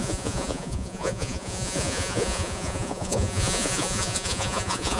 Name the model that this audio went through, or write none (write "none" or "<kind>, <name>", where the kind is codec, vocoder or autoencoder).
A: vocoder, Vocos